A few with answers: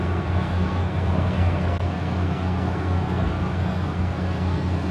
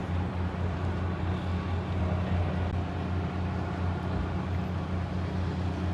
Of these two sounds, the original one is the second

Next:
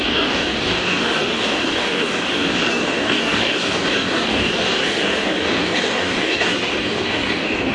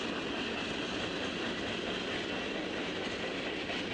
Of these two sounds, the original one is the second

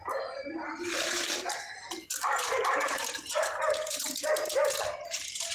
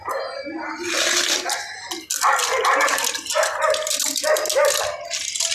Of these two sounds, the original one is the second